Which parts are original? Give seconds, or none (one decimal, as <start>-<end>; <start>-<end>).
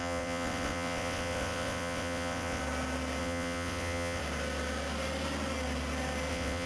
2.6-3.2; 4.2-6.3